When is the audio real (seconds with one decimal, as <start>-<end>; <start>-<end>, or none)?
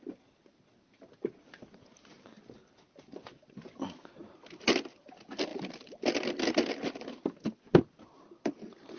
0.0-9.0